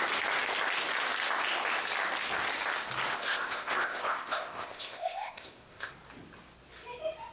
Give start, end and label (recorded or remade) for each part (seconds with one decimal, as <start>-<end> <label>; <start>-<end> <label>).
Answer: 0.0-3.1 recorded; 3.1-5.9 remade; 5.9-7.3 recorded